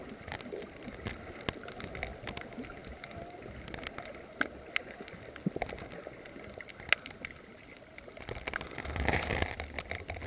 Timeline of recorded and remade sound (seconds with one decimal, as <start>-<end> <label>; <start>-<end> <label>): 0.0-10.3 recorded

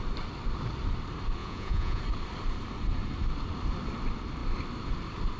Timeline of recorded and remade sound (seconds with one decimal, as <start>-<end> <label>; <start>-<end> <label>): 0.0-1.4 recorded; 1.4-2.0 remade; 2.0-5.4 recorded

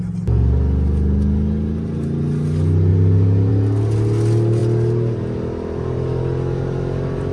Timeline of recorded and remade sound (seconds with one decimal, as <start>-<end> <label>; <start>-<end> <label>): 0.0-7.3 recorded

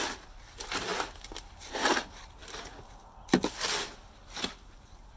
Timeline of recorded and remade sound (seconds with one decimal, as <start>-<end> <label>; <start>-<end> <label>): 0.0-5.2 recorded

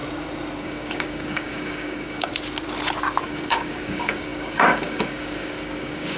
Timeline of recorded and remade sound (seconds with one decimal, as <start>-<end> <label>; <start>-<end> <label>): 0.0-0.6 recorded; 0.6-2.3 remade; 2.3-3.2 recorded; 3.2-6.2 remade

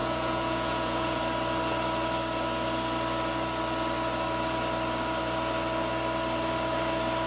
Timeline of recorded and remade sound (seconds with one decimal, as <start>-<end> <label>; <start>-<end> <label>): 0.0-1.2 remade; 1.2-7.3 recorded

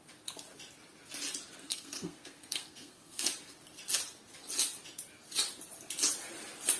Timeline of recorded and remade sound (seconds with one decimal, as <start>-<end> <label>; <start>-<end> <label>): 0.0-1.6 recorded; 1.6-3.3 remade; 3.3-6.8 recorded